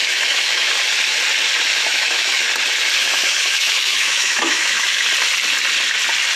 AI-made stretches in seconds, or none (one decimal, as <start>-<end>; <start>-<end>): 0.0-0.7; 1.8-2.5; 3.0-5.0